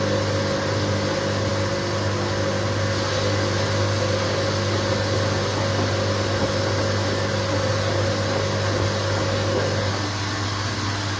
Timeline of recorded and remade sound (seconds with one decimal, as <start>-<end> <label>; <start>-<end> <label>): 0.0-11.2 recorded